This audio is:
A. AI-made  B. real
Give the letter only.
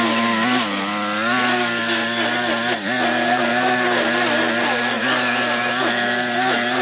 B